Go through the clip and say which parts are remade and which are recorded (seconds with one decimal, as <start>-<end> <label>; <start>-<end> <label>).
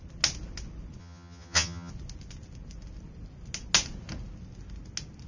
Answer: 0.0-1.0 recorded; 1.0-1.9 remade; 1.9-5.3 recorded